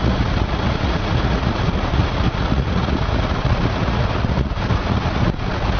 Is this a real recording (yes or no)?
no